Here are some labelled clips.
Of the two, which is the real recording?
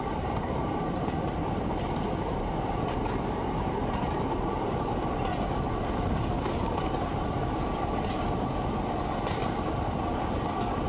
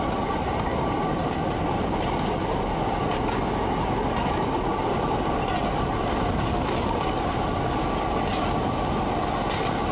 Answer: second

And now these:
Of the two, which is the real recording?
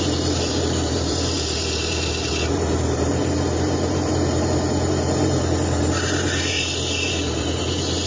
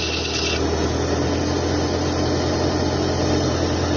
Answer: second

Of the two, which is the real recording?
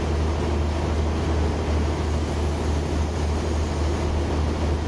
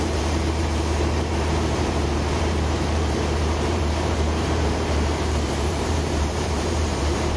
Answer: first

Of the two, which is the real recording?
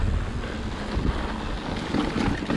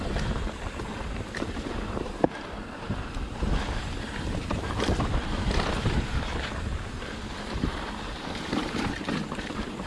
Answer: first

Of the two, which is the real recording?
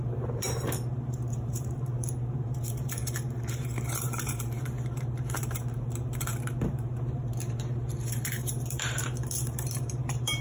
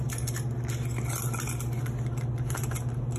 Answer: second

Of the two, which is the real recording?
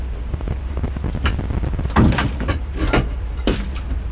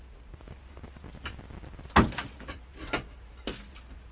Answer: second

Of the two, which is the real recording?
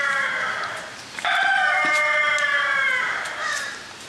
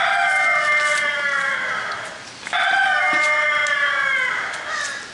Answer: second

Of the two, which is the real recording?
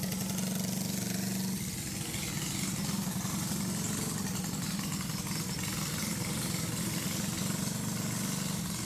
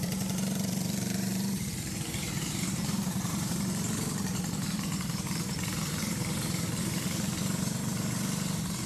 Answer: first